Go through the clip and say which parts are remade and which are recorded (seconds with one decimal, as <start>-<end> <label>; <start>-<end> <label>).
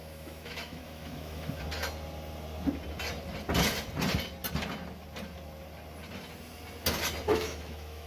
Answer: 0.0-1.6 remade; 1.6-7.3 recorded; 7.3-8.1 remade